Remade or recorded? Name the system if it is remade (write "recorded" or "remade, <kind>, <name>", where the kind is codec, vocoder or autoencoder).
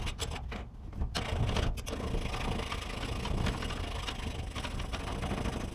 recorded